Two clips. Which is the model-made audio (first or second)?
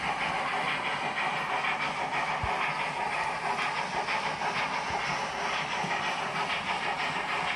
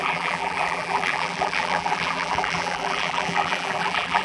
second